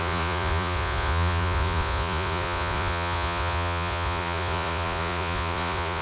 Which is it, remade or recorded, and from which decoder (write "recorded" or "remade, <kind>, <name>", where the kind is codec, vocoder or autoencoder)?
remade, vocoder, Vocos